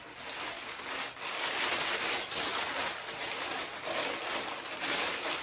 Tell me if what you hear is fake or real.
real